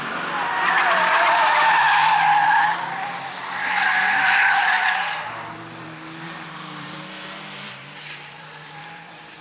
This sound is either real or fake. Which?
fake